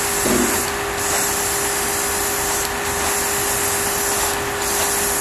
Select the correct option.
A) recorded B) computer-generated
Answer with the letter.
A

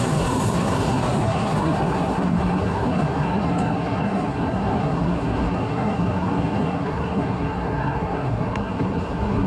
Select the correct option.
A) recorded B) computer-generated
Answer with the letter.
B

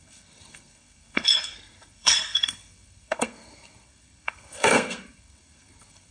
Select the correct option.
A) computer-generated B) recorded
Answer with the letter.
A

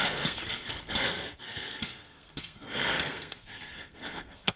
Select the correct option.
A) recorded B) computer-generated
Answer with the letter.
B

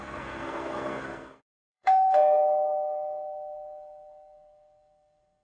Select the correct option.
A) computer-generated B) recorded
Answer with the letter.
A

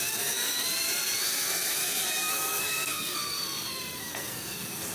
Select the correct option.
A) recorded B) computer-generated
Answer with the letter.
B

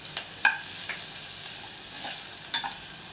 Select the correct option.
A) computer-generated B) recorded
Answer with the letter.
B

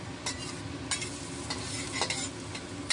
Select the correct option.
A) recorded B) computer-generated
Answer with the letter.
A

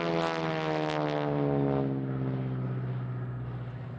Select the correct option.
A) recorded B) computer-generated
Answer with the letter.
A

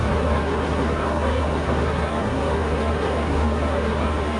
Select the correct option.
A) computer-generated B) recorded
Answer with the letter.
A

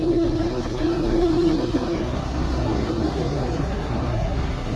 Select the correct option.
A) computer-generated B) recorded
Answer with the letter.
A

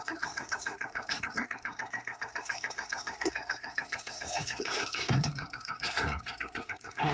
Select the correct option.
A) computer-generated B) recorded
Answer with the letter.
A